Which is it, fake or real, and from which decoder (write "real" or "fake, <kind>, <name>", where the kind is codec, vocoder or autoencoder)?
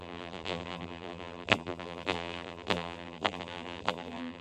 fake, vocoder, BigVGAN v2